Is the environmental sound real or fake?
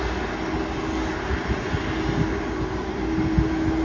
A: real